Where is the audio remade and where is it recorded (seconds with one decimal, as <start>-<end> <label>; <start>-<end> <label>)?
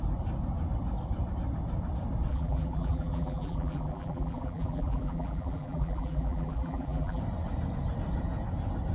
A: 0.0-2.3 recorded; 2.3-7.2 remade; 7.2-8.9 recorded